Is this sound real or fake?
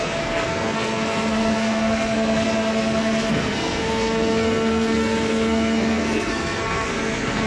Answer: fake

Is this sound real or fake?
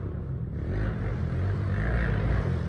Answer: real